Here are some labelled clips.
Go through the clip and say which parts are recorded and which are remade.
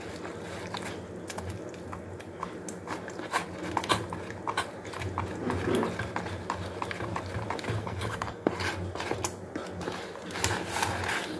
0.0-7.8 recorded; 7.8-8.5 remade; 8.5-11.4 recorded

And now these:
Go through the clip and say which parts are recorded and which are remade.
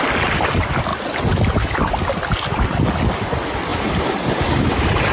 0.0-3.7 recorded; 3.7-5.1 remade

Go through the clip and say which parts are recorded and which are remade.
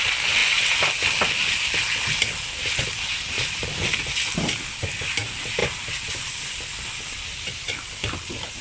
0.0-8.6 recorded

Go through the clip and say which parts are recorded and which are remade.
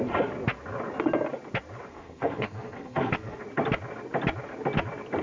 0.0-1.9 recorded; 1.9-3.4 remade; 3.4-5.2 recorded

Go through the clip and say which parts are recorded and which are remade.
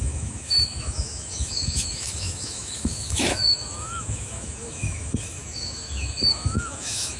0.0-7.2 remade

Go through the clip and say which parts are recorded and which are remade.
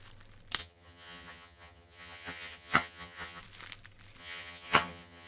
0.0-0.6 recorded; 0.6-3.4 remade; 3.4-4.2 recorded; 4.2-5.3 remade